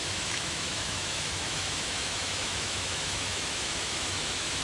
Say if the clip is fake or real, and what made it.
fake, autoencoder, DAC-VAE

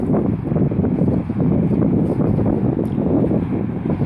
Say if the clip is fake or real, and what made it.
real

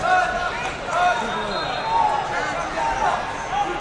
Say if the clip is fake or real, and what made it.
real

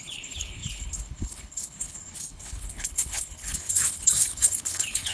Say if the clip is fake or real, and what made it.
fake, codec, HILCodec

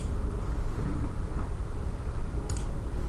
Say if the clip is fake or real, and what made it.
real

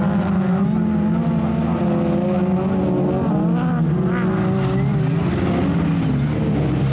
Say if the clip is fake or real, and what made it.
real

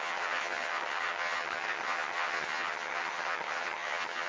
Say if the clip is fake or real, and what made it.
fake, vocoder, HiFi-GAN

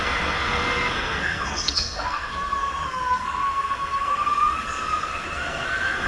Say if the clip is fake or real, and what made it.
fake, codec, SNAC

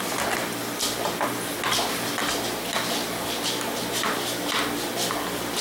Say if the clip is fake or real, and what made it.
real